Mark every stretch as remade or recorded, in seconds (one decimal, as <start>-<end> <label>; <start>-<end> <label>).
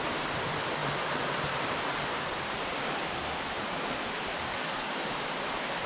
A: 0.0-4.5 recorded; 4.5-5.0 remade; 5.0-5.9 recorded